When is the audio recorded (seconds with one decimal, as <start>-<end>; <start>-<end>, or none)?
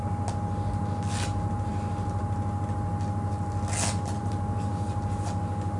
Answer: 0.0-5.8